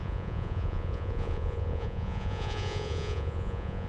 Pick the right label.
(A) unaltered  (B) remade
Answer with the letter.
B